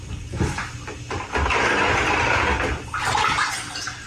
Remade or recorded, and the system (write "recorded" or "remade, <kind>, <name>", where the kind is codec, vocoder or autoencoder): recorded